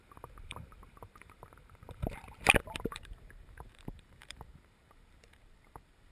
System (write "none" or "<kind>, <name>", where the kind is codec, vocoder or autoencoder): vocoder, BigVGAN v2